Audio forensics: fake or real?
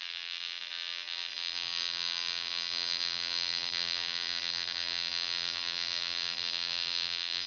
fake